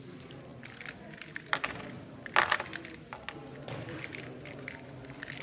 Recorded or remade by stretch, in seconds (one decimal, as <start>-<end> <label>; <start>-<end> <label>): 0.0-5.4 recorded